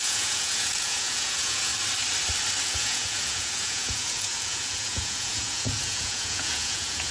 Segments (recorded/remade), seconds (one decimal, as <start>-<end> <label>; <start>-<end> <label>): 0.0-1.7 remade; 1.7-2.6 recorded; 2.6-7.1 remade